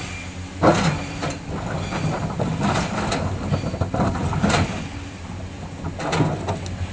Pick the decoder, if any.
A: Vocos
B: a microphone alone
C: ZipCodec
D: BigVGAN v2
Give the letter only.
B